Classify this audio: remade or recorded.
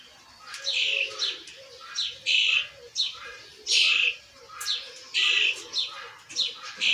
recorded